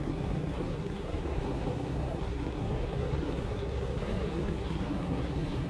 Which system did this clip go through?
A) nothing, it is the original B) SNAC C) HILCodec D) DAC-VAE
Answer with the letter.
B